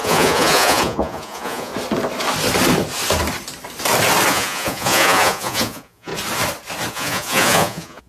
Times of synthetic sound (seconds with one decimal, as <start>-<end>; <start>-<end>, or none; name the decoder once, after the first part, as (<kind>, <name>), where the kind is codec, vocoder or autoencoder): 0.0-1.7 (vocoder, Vocos); 4.3-6.1; 6.9-8.1